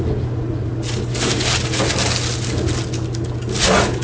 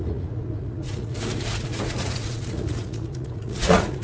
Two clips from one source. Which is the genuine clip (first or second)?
first